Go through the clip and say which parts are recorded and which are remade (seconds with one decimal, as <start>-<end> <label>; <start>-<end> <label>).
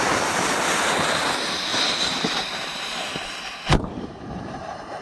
0.0-1.7 recorded; 1.7-5.0 remade